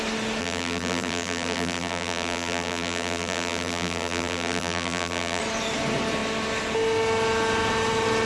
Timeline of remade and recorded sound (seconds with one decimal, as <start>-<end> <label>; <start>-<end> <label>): 0.0-0.4 recorded; 0.4-5.4 remade; 5.4-8.3 recorded